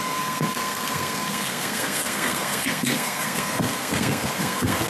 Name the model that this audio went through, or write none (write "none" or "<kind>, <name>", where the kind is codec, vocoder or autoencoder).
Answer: codec, SNAC